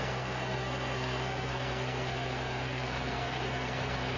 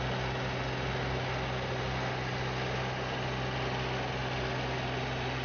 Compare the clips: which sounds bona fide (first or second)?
second